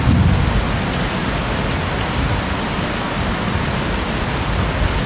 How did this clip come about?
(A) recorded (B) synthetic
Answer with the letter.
A